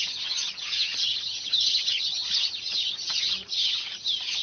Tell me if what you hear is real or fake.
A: fake